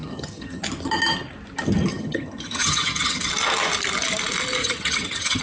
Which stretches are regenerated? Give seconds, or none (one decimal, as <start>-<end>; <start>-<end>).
0.0-0.6; 1.9-3.3; 4.6-5.4